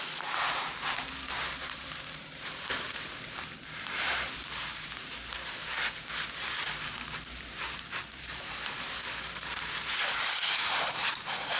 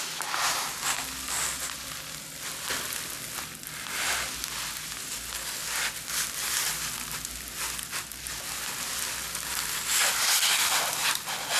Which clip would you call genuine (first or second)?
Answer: second